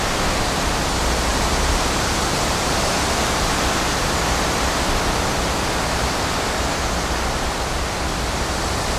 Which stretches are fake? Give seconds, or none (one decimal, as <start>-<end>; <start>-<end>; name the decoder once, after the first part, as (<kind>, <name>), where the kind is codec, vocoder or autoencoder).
1.3-3.9 (vocoder, BigVGAN v2)